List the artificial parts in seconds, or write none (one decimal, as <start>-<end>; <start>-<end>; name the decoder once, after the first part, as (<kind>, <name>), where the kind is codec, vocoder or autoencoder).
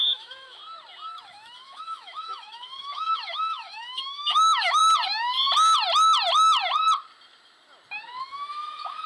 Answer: 0.0-0.6 (autoencoder, DAC-VAE); 1.2-4.8; 8.2-9.1